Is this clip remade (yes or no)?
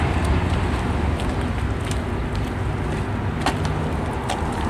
no